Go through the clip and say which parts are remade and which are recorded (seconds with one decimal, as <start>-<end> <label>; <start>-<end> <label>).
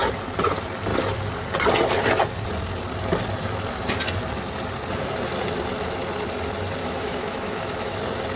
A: 0.0-6.8 recorded; 6.8-7.9 remade; 7.9-8.4 recorded